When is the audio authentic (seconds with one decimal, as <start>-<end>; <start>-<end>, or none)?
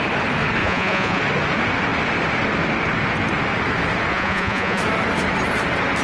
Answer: 0.0-0.6; 1.2-4.1; 4.8-6.0